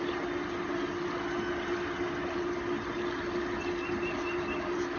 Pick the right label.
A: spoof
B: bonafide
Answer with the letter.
B